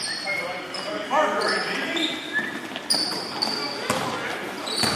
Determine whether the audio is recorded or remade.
remade